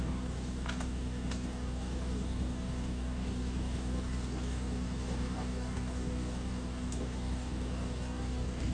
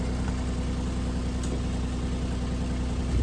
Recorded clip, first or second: second